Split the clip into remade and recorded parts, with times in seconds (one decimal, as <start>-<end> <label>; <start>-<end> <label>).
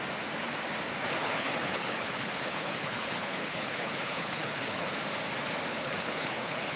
0.0-1.2 recorded; 1.2-4.9 remade; 4.9-5.7 recorded; 5.7-6.8 remade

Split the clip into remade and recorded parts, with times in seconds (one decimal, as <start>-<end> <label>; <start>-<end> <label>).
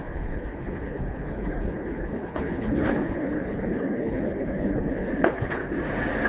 0.0-5.6 remade; 5.6-6.3 recorded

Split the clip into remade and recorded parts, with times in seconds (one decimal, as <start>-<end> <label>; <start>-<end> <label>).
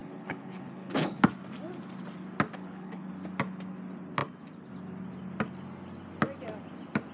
0.0-1.2 remade; 1.2-2.6 recorded; 2.6-3.1 remade; 3.1-7.1 recorded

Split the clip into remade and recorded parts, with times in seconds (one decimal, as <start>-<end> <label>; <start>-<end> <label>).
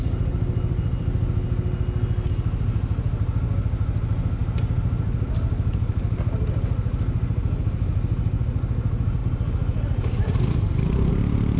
0.0-11.6 recorded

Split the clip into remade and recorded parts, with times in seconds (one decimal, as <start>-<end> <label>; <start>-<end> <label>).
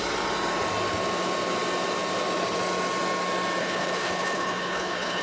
0.0-3.6 recorded; 3.6-5.2 remade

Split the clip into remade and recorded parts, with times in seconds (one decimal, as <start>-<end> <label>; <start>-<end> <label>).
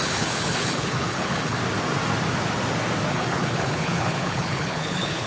0.0-1.6 remade; 1.6-3.1 recorded; 3.1-5.3 remade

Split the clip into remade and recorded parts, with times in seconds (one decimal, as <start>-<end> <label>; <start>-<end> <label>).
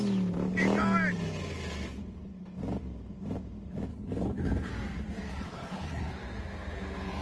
0.0-3.9 recorded; 3.9-4.7 remade; 4.7-5.3 recorded; 5.3-6.1 remade; 6.1-7.2 recorded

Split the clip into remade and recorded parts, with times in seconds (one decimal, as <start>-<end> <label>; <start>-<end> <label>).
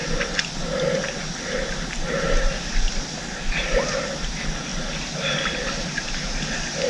0.0-6.9 recorded